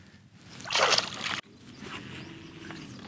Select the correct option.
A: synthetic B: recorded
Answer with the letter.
B